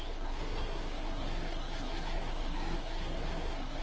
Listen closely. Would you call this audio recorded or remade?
remade